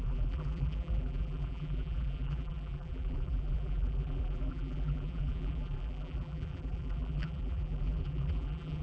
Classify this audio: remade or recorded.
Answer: remade